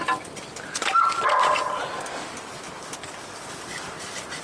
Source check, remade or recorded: recorded